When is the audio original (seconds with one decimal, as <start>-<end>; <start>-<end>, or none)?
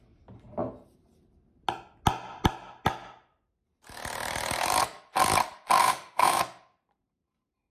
0.0-5.8; 6.4-7.7